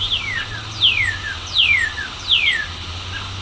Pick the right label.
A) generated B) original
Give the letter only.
B